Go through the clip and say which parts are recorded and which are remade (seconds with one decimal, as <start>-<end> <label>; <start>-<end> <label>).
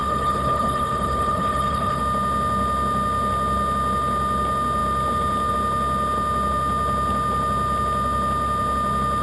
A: 0.0-2.0 remade; 2.0-9.2 recorded